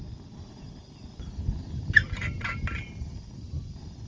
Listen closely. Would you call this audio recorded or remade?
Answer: recorded